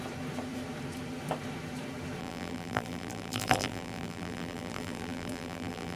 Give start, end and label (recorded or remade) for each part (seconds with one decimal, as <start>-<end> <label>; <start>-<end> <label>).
0.0-2.2 recorded; 2.2-6.0 remade